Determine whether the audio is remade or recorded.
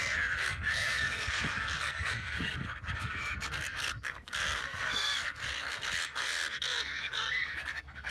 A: remade